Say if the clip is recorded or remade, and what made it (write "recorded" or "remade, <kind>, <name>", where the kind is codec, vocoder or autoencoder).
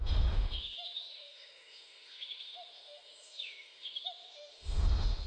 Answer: remade, autoencoder, DAC-VAE